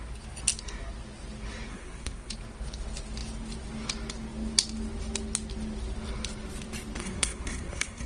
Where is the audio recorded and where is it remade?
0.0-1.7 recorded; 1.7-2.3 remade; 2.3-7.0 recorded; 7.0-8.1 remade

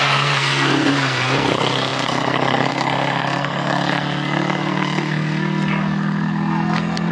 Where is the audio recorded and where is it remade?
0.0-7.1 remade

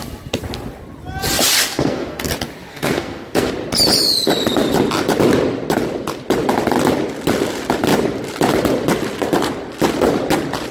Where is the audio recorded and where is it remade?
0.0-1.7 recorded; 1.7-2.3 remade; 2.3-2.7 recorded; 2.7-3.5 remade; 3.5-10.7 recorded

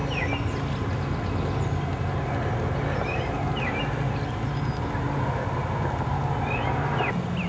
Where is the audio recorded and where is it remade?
0.0-7.5 recorded